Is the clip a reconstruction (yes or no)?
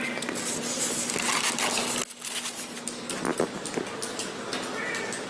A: no